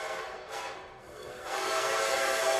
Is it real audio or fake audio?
fake